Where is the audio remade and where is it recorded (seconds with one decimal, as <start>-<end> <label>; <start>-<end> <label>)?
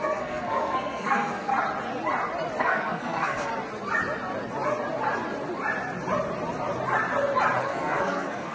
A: 0.0-1.5 remade; 1.5-2.6 recorded; 2.6-3.5 remade; 3.5-7.6 recorded; 7.6-8.5 remade